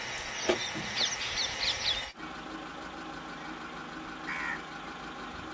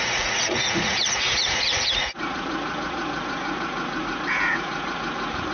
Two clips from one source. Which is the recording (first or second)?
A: first